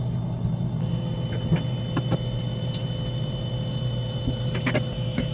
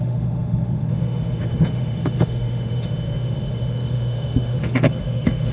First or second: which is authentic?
first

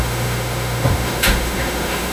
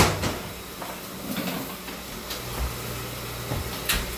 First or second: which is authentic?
second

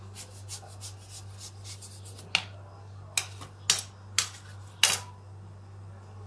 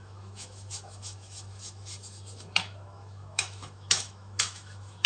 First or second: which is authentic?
first